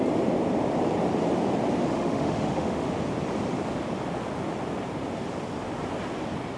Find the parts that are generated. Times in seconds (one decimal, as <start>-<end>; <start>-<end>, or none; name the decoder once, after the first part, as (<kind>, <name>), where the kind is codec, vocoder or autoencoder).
1.9-2.9 (autoencoder, DAC-VAE)